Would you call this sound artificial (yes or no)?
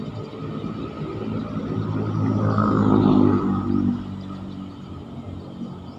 no